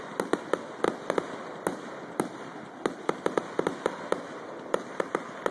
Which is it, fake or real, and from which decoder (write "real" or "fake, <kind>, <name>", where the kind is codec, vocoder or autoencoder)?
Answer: real